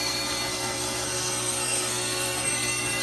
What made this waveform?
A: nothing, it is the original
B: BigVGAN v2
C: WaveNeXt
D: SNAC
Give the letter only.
D